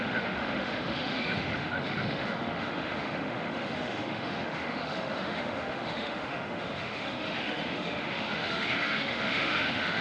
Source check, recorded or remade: remade